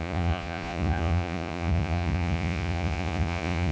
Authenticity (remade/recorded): remade